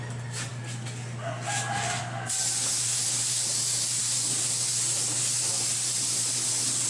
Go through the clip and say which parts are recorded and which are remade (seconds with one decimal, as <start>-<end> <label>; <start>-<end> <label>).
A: 0.0-6.9 recorded